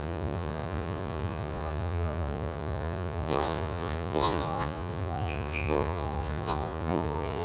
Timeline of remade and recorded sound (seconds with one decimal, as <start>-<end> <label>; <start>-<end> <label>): 0.0-7.4 remade